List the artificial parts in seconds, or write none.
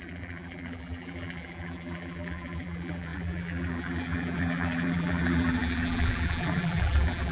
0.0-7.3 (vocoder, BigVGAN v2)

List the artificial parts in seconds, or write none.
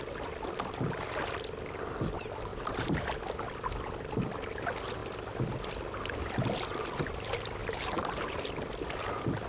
2.5-3.2 (vocoder, BigVGAN v2); 7.6-8.4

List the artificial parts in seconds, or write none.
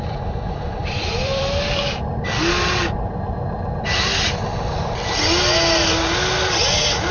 0.8-2.5 (vocoder, BigVGAN v2); 4.5-5.1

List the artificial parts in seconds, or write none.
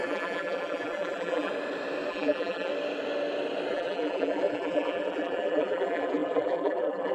0.0-1.5 (vocoder, BigVGAN v2); 2.1-2.7; 3.7-7.1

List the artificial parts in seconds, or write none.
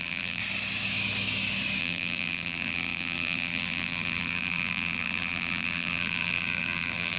0.0-0.4 (vocoder, BigVGAN v2); 1.8-7.2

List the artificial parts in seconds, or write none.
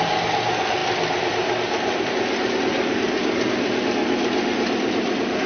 0.8-2.1 (vocoder, BigVGAN v2); 3.2-5.1